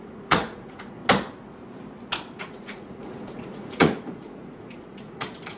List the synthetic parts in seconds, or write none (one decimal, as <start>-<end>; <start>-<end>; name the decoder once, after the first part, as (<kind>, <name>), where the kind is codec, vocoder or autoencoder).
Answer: 0.0-1.0 (vocoder, Vocos); 2.4-5.6